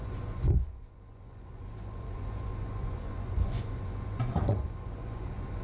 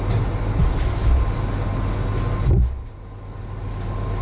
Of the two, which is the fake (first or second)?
first